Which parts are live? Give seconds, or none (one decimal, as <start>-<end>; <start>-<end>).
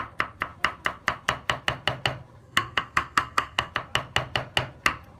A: 0.0-2.4; 3.7-5.2